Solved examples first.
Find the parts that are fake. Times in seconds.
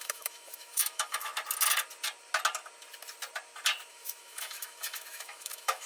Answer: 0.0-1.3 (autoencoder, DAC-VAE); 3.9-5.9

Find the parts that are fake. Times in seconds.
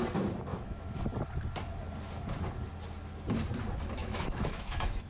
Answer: 0.5-1.0 (autoencoder, DAC-VAE); 4.0-5.1